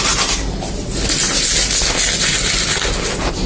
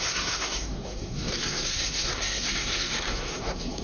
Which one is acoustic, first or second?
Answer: first